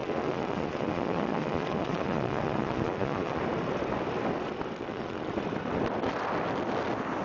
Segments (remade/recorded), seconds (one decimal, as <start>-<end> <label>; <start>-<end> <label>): 0.0-3.4 remade; 3.4-4.8 recorded; 4.8-5.3 remade; 5.3-7.2 recorded